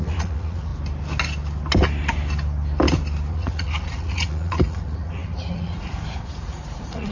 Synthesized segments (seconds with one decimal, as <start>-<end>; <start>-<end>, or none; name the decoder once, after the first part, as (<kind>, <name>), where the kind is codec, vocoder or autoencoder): 0.0-0.7 (vocoder, Vocos); 3.3-7.1